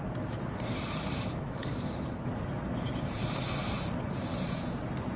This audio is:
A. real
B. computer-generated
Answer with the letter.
B